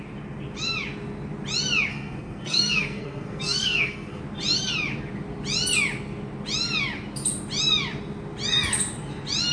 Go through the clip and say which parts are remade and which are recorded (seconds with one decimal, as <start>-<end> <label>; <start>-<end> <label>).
0.0-1.9 recorded; 1.9-4.2 remade; 4.2-9.5 recorded